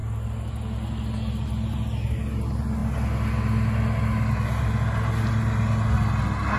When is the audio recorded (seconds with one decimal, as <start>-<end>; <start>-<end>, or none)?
0.0-6.6